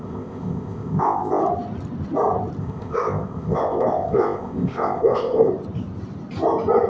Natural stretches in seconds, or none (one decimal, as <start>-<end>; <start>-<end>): 1.4-2.6; 5.5-6.9